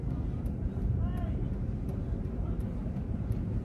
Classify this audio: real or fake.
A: fake